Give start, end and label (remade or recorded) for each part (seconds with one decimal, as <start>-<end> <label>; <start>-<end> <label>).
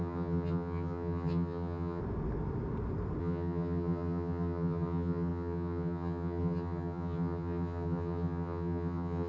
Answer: 0.0-2.0 remade; 2.0-3.2 recorded; 3.2-9.3 remade